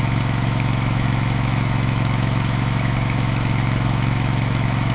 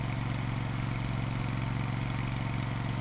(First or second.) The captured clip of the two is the second